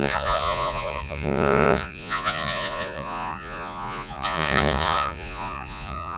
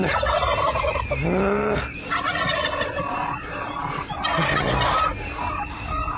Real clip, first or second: second